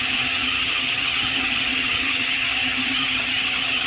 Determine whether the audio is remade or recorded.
remade